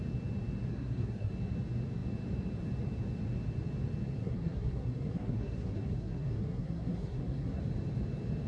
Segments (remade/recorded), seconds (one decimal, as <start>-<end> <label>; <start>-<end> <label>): 0.0-0.7 recorded; 0.7-1.3 remade; 1.3-4.2 recorded; 4.2-7.6 remade; 7.6-8.5 recorded